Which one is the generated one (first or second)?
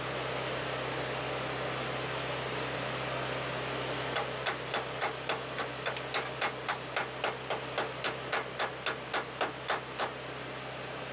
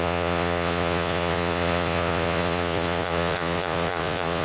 second